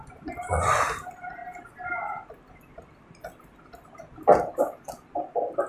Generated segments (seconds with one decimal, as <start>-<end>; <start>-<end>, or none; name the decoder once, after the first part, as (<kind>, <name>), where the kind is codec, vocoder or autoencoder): none